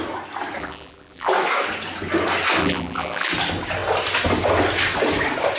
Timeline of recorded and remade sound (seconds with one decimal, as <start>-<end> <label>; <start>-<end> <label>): 0.0-0.6 recorded; 0.6-1.3 remade; 1.3-2.6 recorded; 2.6-3.3 remade; 3.3-5.6 recorded